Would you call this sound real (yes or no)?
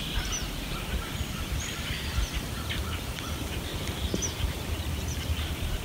no